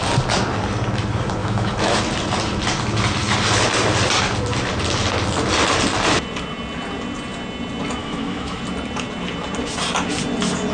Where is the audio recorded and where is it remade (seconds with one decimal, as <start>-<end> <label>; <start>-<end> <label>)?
0.0-1.4 recorded; 1.4-2.0 remade; 2.0-8.0 recorded; 8.0-8.6 remade; 8.6-10.7 recorded